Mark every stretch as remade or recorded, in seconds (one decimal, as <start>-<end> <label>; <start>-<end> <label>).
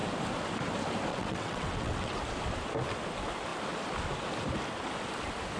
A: 0.0-1.1 recorded; 1.1-2.2 remade; 2.2-5.6 recorded